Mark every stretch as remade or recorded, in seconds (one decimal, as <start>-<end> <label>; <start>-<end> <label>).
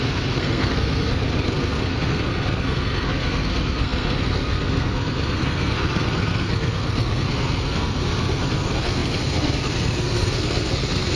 0.0-11.2 remade